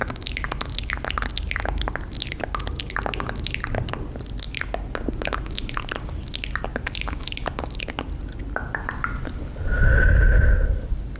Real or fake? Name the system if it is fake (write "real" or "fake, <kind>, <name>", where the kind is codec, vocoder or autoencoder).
real